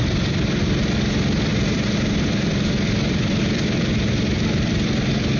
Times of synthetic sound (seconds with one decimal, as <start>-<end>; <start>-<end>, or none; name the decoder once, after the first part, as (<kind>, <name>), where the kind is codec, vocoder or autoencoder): 1.5-4.7 (vocoder, BigVGAN v2)